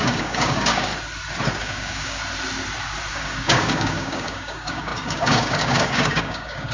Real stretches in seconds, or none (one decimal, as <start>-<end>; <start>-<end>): 0.9-1.6; 2.2-3.1